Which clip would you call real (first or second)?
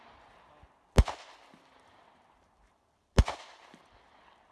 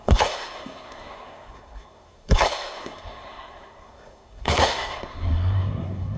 first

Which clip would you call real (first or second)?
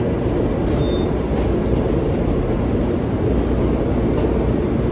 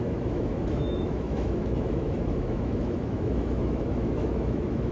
first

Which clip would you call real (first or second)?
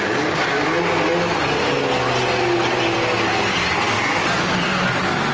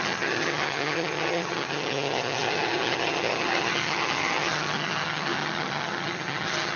first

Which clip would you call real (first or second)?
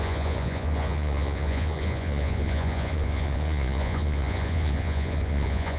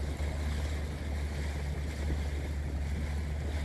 second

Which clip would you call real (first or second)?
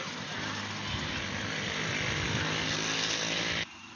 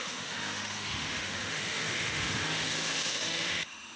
first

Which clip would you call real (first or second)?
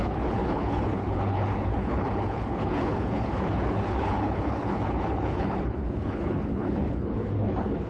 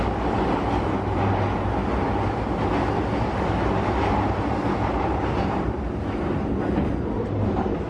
second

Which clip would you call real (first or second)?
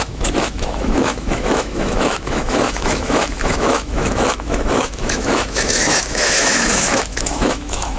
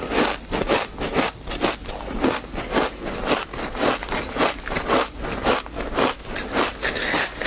second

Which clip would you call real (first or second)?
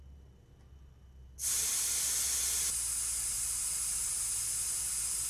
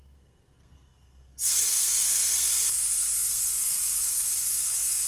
first